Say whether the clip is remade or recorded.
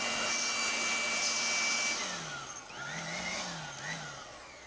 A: recorded